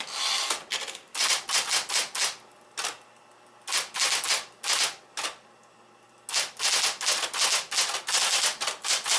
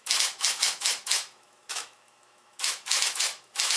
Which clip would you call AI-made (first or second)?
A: second